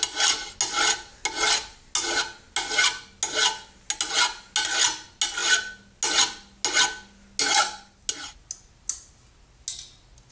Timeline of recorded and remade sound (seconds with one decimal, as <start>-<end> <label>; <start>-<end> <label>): 0.0-10.3 recorded